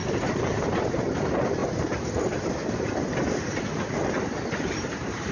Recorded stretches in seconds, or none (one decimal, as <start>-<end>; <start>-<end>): 0.0-5.3